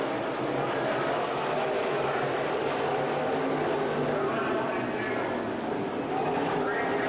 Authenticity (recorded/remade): recorded